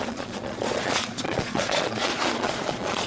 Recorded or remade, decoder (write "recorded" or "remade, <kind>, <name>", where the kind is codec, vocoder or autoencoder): remade, vocoder, Vocos